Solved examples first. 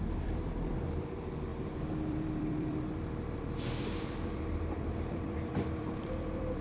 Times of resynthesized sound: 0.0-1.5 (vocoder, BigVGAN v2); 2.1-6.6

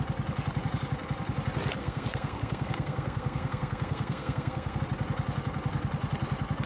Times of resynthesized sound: 1.8-4.8 (codec, SNAC)

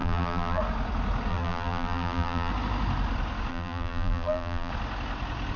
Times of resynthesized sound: 0.0-0.6 (vocoder, BigVGAN v2); 1.3-2.5; 3.5-4.7

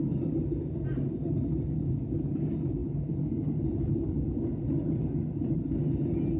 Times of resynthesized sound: none